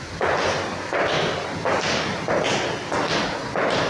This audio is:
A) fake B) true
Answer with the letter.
B